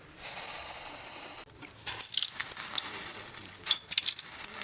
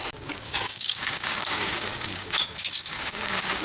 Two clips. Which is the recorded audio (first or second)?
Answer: first